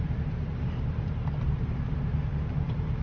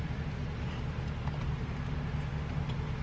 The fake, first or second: first